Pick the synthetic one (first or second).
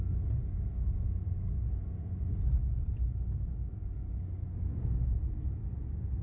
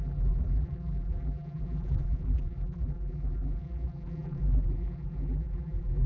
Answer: second